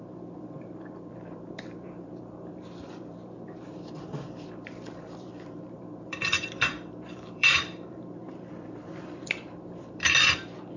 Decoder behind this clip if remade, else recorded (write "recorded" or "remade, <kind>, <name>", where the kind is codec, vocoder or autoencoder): remade, vocoder, BigVGAN v2